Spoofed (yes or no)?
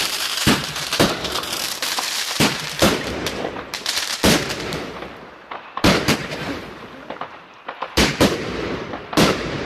yes